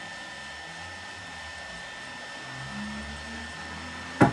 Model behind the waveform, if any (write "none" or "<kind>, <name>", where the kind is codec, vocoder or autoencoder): none